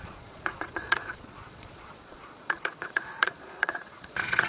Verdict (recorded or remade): remade